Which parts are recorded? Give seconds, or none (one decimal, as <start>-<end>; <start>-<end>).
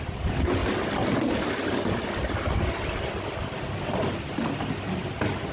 0.0-5.5